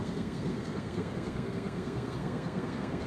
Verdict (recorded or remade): remade